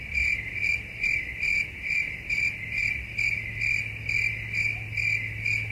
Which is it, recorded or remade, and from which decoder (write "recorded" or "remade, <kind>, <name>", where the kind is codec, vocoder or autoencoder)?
recorded